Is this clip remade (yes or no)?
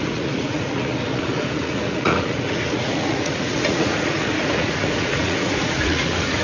yes